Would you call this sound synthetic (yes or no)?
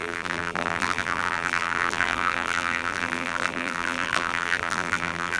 yes